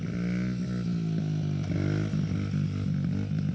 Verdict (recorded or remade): recorded